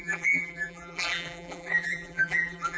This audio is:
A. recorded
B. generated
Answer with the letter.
B